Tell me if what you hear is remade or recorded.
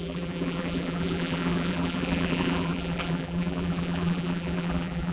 remade